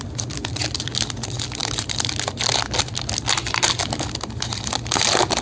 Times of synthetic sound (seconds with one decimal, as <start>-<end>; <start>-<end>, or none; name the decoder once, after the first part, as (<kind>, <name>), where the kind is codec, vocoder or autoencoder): none